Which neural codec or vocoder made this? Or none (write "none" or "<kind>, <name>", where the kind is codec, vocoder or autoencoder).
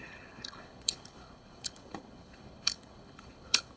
codec, HILCodec